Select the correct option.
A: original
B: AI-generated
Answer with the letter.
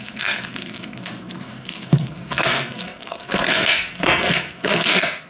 B